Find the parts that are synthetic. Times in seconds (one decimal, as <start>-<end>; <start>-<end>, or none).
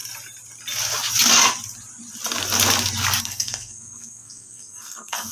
3.2-5.3